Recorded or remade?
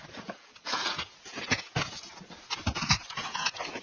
remade